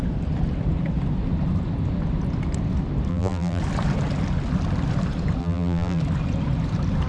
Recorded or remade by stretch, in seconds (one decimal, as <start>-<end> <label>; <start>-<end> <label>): 0.0-3.1 recorded; 3.1-3.6 remade; 3.6-5.4 recorded; 5.4-6.0 remade; 6.0-7.1 recorded